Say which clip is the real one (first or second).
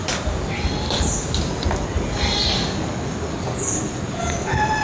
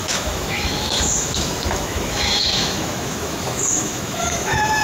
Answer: first